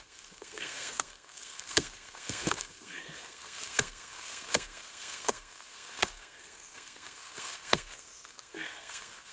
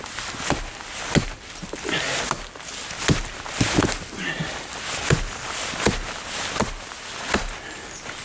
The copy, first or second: first